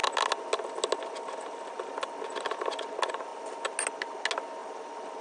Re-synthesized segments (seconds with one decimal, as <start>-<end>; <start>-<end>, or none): none